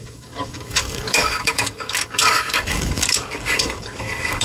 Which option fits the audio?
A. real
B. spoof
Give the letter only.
B